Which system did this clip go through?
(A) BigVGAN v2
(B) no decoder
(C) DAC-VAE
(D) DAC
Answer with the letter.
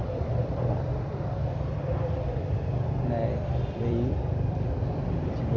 A